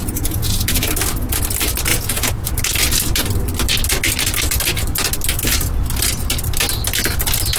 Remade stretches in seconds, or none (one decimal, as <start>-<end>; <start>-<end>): 0.0-0.9; 1.9-2.5